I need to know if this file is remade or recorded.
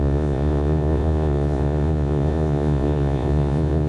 remade